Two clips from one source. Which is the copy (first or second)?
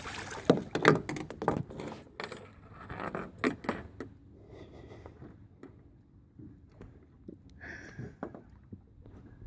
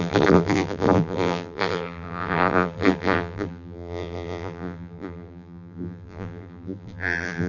second